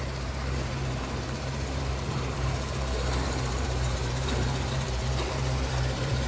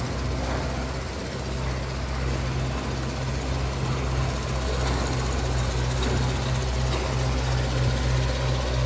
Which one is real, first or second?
second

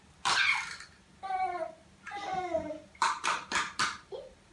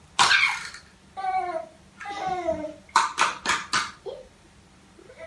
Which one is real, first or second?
second